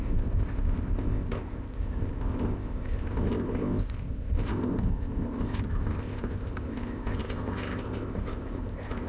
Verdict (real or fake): fake